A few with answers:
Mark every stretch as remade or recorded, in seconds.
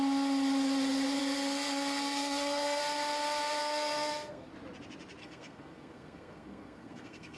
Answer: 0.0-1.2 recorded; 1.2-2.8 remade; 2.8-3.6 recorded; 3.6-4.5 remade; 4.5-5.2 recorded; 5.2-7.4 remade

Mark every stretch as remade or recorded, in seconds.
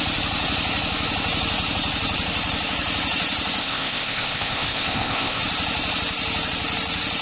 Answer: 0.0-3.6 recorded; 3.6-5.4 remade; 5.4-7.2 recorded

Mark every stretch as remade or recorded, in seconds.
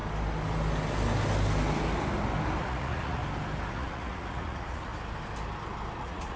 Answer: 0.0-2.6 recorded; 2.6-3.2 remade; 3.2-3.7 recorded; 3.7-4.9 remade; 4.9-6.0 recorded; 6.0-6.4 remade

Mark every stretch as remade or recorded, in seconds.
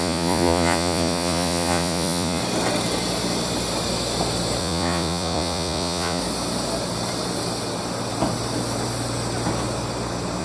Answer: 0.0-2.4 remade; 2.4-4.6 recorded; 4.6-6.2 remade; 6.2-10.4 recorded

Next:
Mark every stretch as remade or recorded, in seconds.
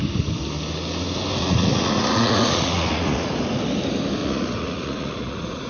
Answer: 0.0-1.4 recorded; 1.4-3.3 remade; 3.3-4.2 recorded; 4.2-5.7 remade